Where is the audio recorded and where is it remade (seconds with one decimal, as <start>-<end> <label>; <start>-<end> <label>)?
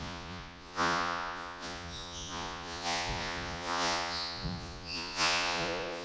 0.0-6.0 remade